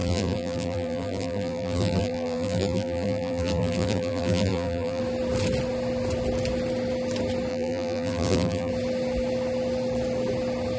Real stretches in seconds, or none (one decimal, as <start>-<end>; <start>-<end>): 5.0-7.5; 8.7-10.8